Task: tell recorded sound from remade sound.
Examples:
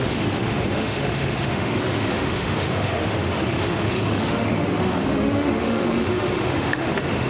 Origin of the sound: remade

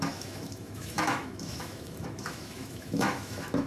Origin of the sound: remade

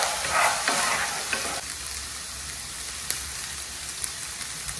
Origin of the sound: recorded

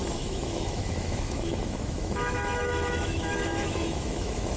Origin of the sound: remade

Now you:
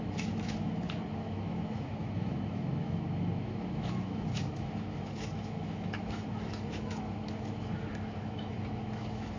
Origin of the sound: remade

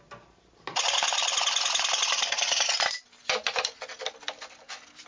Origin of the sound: recorded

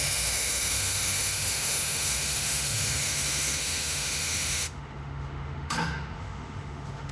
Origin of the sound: remade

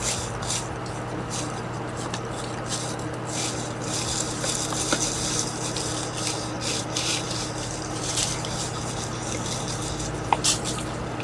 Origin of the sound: recorded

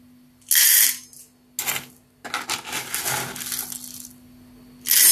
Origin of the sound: recorded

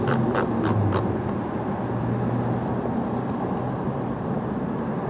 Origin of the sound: recorded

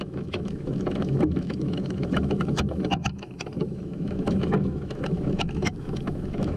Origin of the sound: remade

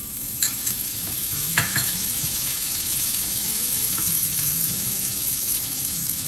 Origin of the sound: remade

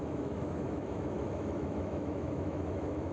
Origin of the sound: remade